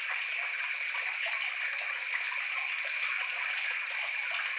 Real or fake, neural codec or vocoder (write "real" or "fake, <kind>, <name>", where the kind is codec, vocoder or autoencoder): real